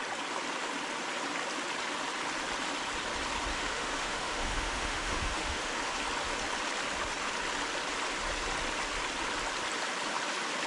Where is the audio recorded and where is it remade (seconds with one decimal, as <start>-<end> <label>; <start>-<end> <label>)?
0.0-3.5 recorded; 3.5-5.8 remade; 5.8-10.7 recorded